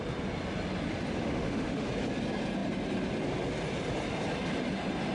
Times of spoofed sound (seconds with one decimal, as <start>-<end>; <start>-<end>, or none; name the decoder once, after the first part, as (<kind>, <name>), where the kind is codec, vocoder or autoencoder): 1.2-1.9 (autoencoder, DAC-VAE)